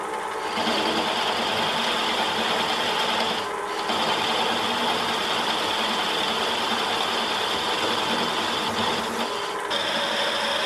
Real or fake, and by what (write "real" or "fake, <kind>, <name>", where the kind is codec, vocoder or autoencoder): real